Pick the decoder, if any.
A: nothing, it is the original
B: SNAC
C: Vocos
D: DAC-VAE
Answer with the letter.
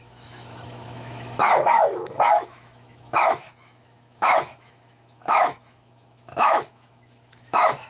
D